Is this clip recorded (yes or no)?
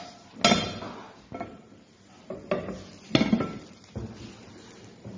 yes